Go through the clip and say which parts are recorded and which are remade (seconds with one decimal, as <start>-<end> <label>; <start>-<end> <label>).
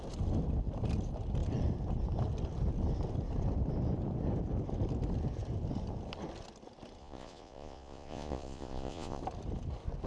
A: 0.0-7.0 recorded; 7.0-9.2 remade; 9.2-10.1 recorded